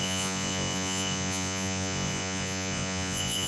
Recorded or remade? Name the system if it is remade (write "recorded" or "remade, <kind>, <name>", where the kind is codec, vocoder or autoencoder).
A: remade, vocoder, Vocos